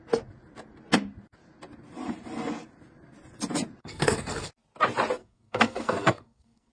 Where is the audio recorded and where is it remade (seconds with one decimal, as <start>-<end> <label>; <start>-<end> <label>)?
0.0-3.8 recorded; 3.8-4.5 remade; 4.5-5.2 recorded; 5.2-6.7 remade